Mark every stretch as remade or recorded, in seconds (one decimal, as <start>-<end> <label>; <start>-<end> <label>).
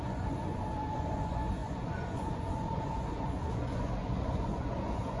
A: 0.0-5.2 remade